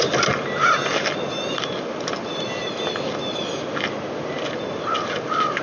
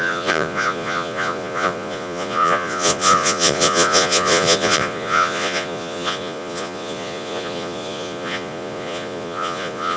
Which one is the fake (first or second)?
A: second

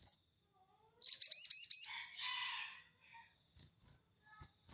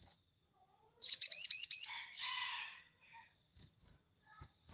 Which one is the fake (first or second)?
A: second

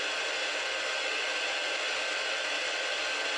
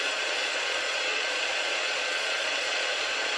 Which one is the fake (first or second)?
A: second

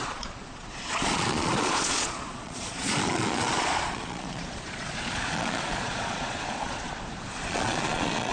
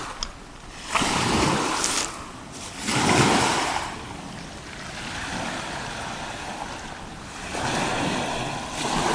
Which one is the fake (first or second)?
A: first